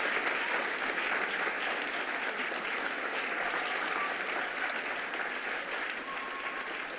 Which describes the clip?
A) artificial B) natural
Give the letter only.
B